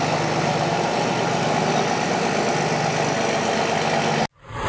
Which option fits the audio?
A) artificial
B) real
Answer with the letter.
B